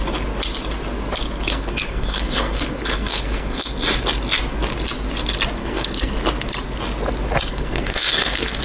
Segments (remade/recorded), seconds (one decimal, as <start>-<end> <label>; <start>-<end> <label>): 0.0-1.5 recorded; 1.5-3.7 remade; 3.7-5.6 recorded; 5.6-6.1 remade; 6.1-7.5 recorded; 7.5-8.6 remade